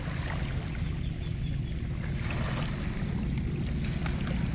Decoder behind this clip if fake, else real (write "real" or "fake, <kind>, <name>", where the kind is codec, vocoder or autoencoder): real